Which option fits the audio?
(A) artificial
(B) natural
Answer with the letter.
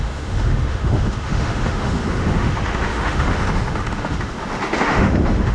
A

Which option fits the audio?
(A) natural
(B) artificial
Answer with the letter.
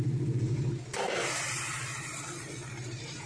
A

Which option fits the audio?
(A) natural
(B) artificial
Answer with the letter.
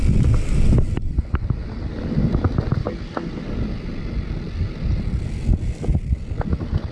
A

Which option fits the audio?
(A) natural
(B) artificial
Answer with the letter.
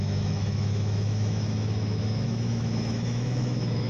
B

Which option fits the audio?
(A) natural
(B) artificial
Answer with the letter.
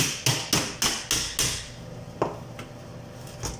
A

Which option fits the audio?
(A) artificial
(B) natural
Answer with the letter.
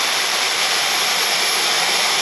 B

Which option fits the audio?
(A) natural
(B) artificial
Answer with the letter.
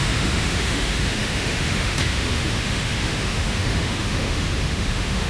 B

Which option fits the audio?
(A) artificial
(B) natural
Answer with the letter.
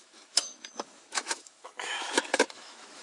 A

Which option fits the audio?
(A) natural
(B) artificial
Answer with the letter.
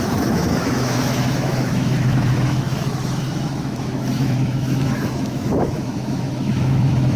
B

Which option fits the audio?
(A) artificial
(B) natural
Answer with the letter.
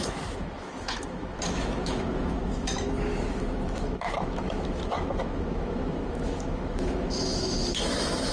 A